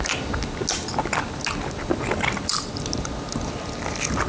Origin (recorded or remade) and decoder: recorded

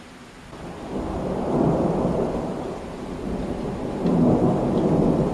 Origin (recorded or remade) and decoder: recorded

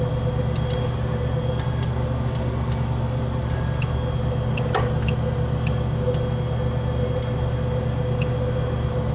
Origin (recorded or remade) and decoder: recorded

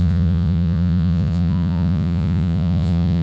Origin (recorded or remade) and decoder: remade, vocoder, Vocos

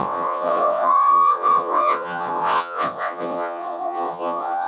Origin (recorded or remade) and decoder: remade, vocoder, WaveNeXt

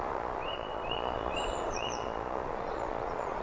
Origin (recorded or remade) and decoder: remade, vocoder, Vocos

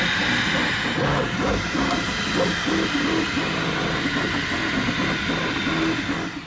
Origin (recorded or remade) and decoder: recorded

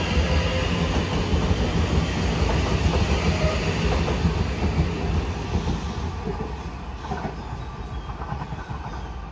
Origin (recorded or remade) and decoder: recorded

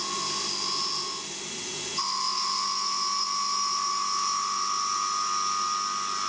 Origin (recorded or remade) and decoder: recorded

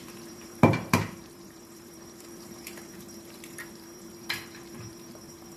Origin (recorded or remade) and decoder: remade, vocoder, BigVGAN v2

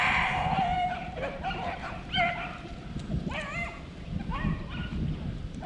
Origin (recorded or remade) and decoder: remade, vocoder, BigVGAN v2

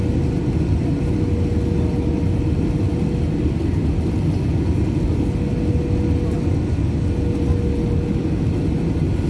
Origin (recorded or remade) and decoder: recorded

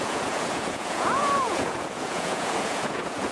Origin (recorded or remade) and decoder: remade, vocoder, Vocos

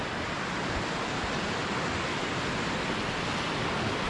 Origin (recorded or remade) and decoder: recorded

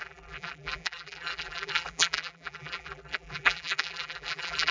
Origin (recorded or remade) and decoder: remade, vocoder, BigVGAN v2